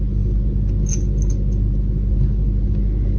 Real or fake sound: real